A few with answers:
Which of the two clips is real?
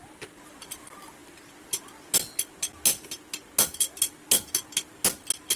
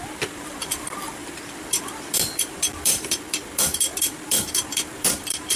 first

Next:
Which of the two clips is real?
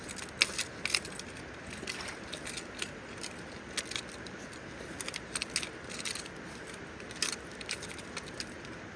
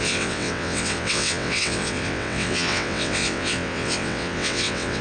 first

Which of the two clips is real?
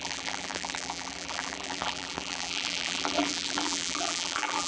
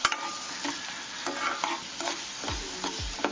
second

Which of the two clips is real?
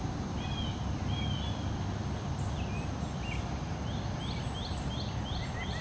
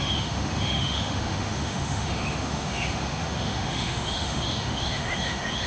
first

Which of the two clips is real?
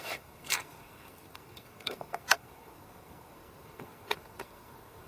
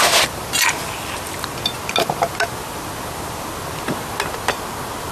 second